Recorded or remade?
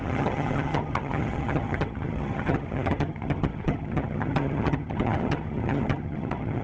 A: remade